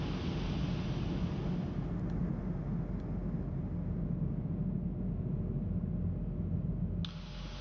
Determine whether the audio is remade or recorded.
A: recorded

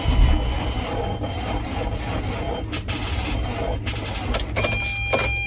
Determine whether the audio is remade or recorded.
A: recorded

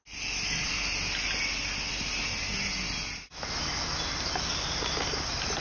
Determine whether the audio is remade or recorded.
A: recorded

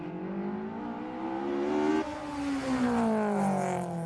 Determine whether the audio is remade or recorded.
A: recorded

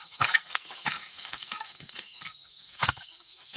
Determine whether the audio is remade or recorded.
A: remade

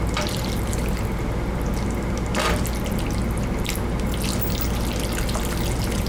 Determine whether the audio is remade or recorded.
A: recorded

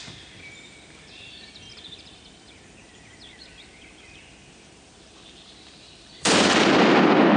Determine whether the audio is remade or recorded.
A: remade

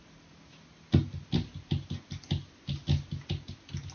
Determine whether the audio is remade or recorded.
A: recorded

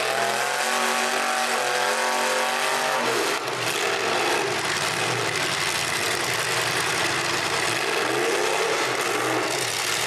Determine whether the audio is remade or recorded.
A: recorded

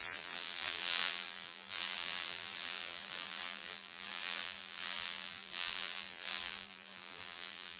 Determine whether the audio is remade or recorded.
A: remade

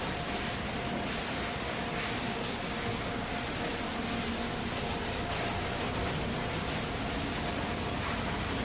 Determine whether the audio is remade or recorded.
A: recorded